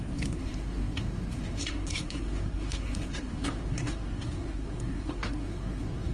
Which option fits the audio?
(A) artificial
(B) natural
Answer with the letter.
A